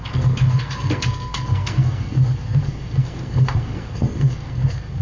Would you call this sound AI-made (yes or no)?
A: yes